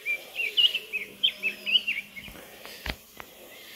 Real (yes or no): no